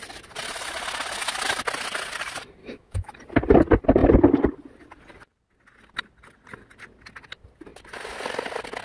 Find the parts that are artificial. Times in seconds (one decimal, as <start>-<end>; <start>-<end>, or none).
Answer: 2.6-3.1